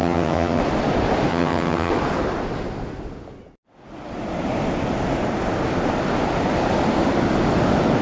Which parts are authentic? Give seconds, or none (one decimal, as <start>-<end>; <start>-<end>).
0.6-1.3; 1.9-8.0